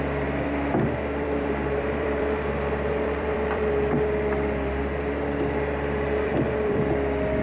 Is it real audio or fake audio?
fake